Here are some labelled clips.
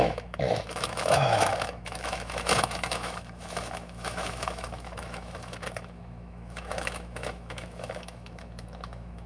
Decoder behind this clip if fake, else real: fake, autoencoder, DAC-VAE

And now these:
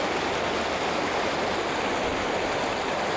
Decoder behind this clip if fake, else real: real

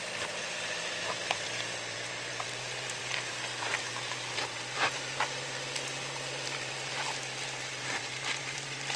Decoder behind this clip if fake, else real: fake, vocoder, BigVGAN v2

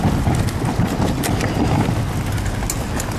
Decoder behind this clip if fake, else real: real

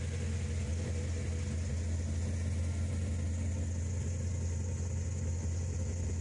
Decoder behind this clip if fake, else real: real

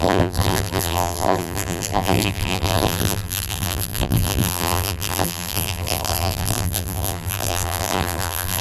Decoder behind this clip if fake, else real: fake, vocoder, BigVGAN v2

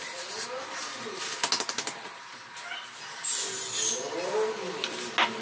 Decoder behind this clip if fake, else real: real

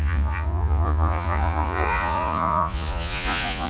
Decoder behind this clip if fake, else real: fake, vocoder, Vocos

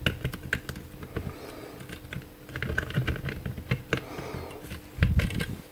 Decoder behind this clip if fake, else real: real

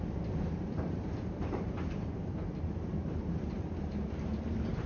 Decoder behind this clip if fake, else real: fake, vocoder, BigVGAN v2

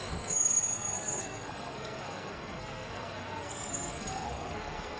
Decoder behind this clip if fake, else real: fake, codec, SNAC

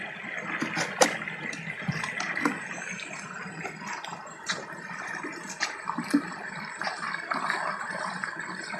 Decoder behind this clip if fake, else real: real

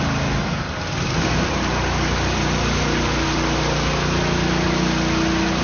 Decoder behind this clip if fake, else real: real